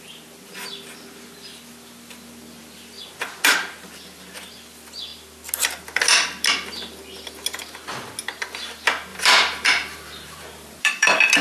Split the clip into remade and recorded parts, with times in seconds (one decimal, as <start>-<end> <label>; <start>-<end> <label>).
0.0-9.1 recorded; 9.1-11.4 remade

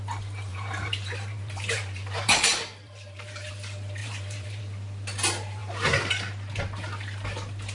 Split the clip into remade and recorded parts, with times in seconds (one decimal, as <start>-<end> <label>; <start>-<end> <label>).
0.0-0.5 recorded; 0.5-3.5 remade; 3.5-4.0 recorded; 4.0-4.6 remade; 4.6-7.7 recorded

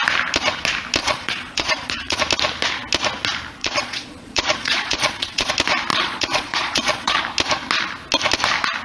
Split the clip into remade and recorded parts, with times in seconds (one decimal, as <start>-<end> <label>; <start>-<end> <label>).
0.0-1.0 recorded; 1.0-2.2 remade; 2.2-3.6 recorded; 3.6-5.5 remade; 5.5-5.9 recorded; 5.9-7.2 remade; 7.2-8.8 recorded

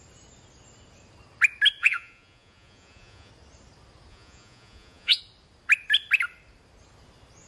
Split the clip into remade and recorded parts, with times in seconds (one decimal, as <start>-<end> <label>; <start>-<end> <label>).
0.0-1.8 recorded; 1.8-3.3 remade; 3.3-4.1 recorded; 4.1-5.2 remade; 5.2-7.5 recorded